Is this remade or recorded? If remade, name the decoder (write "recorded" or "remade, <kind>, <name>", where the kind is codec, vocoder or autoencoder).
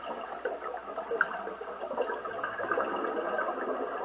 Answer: recorded